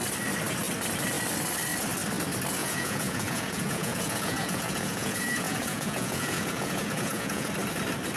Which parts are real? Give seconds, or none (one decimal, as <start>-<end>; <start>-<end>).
0.0-2.6; 7.5-8.2